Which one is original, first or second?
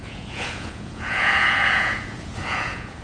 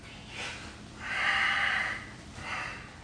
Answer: second